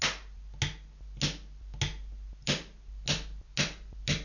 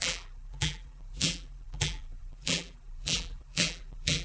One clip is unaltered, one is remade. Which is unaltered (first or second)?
first